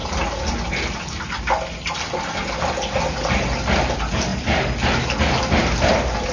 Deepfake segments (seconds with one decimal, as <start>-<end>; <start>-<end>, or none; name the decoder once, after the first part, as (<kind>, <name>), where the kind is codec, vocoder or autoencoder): 3.4-4.3 (vocoder, BigVGAN v2); 5.6-6.3